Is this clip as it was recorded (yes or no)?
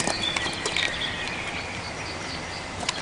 yes